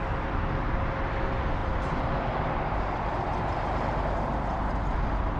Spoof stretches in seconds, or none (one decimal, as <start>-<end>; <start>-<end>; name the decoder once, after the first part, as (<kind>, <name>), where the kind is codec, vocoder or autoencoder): 1.6-4.8 (vocoder, BigVGAN v2)